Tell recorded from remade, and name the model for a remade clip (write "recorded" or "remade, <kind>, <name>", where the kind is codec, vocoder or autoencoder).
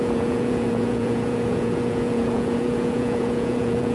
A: remade, vocoder, Vocos